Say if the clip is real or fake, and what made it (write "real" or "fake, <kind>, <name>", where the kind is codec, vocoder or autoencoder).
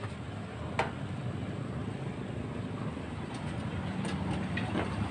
real